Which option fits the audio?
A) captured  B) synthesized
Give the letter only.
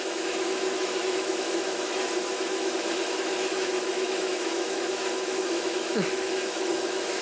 B